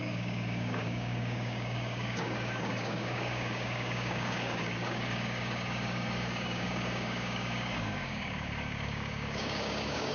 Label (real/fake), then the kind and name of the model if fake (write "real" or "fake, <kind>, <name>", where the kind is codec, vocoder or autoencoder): fake, codec, DAC